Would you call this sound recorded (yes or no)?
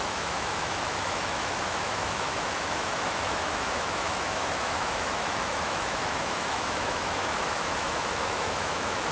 no